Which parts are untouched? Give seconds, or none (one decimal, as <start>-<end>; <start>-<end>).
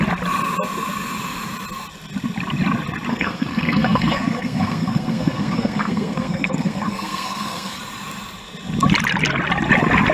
0.0-3.1; 7.8-10.1